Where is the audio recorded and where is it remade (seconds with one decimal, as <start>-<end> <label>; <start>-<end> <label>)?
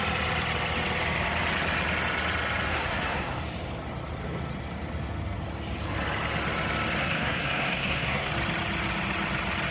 0.0-2.7 recorded; 2.7-3.3 remade; 3.3-7.0 recorded; 7.0-8.3 remade; 8.3-9.7 recorded